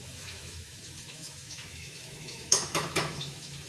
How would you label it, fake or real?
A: fake